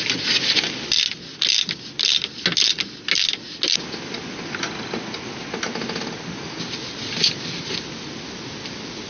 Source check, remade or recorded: recorded